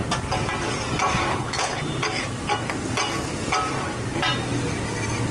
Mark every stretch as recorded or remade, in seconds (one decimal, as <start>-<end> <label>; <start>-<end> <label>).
0.0-1.3 recorded; 1.3-1.8 remade; 1.8-5.3 recorded